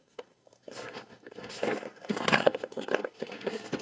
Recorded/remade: remade